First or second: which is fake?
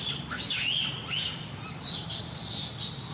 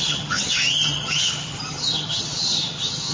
second